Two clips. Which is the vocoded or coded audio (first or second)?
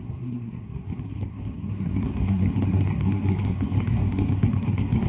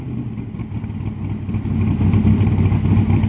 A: first